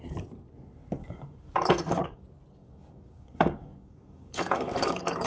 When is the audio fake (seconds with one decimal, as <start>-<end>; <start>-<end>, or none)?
1.0-2.2; 2.6-5.3